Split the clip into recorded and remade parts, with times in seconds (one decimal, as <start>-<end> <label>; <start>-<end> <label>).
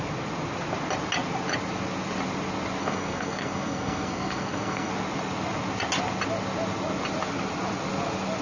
0.0-2.8 recorded; 2.8-4.9 remade; 4.9-8.4 recorded